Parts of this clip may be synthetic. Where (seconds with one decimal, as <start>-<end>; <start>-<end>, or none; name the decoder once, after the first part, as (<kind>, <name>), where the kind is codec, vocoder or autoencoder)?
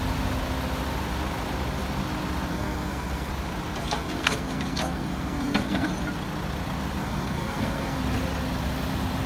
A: 2.5-3.3 (codec, SNAC); 3.8-5.9; 7.0-8.0